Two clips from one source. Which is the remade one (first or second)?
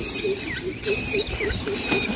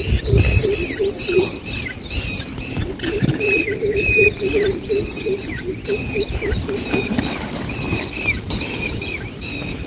second